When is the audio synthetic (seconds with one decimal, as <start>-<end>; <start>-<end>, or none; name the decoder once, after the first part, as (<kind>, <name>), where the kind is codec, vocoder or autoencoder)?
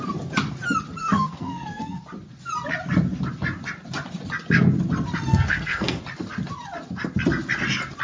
1.0-2.0 (codec, SNAC); 5.3-6.0